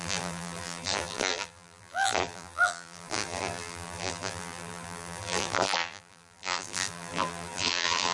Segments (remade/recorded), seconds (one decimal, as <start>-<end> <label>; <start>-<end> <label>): 0.0-8.1 remade

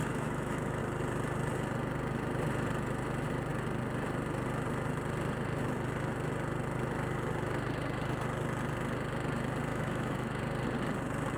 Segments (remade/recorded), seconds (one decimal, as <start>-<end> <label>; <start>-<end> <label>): 0.0-0.8 remade; 0.8-9.7 recorded; 9.7-10.4 remade; 10.4-11.4 recorded

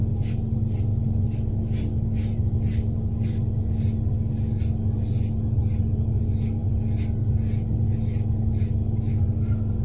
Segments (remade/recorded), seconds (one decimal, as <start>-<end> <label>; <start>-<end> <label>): 0.0-9.8 recorded

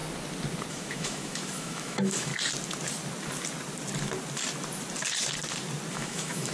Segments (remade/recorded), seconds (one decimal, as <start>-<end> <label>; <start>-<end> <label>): 0.0-0.7 recorded; 0.7-2.3 remade; 2.3-5.9 recorded; 5.9-6.5 remade